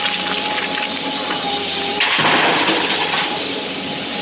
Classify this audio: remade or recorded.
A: recorded